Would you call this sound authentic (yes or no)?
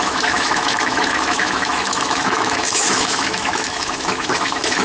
no